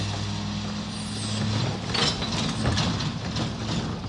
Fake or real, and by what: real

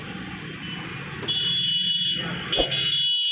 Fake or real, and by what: real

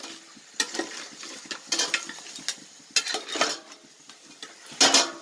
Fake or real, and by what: real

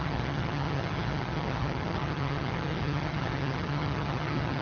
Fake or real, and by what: fake, vocoder, HiFi-GAN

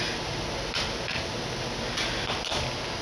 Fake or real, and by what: real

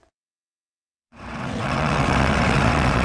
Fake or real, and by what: fake, vocoder, WaveNeXt